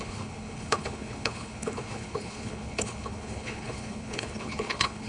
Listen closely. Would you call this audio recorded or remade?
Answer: remade